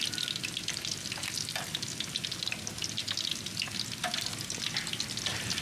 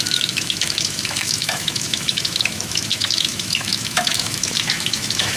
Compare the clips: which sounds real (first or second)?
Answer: first